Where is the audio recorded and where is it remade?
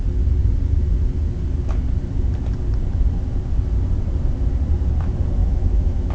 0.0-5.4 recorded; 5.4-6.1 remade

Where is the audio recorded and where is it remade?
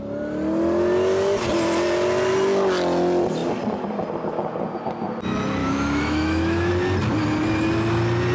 0.0-5.6 recorded; 5.6-6.7 remade; 6.7-8.3 recorded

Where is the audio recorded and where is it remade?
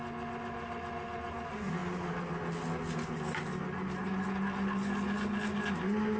0.0-6.2 recorded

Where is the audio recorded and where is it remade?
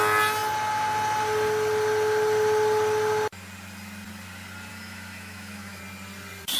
0.0-4.7 recorded; 4.7-5.8 remade; 5.8-6.6 recorded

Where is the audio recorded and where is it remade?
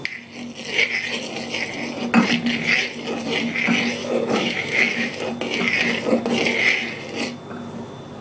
0.0-4.0 recorded; 4.0-5.2 remade; 5.2-8.2 recorded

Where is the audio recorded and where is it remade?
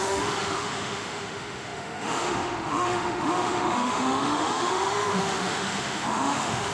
0.0-6.7 remade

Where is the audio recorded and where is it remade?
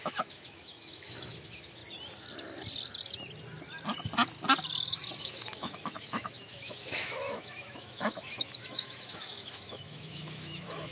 0.0-1.8 remade; 1.8-5.2 recorded; 5.2-10.9 remade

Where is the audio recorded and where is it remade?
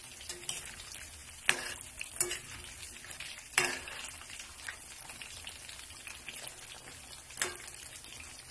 0.0-8.5 recorded